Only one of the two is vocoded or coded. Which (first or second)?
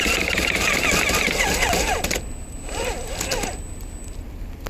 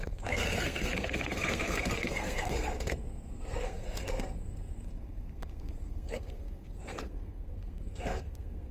second